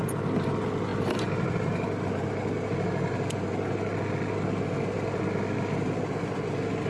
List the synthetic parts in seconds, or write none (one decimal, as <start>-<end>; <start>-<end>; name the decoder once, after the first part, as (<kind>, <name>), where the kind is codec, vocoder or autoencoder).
0.9-2.3 (vocoder, BigVGAN v2)